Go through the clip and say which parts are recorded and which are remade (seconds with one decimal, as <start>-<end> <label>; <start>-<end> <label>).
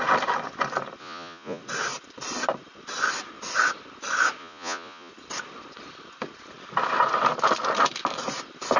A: 0.0-1.0 recorded; 1.0-1.6 remade; 1.6-4.4 recorded; 4.4-5.1 remade; 5.1-8.8 recorded